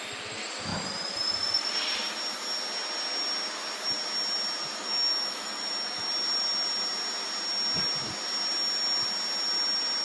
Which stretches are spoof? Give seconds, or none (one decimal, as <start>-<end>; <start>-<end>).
4.7-6.1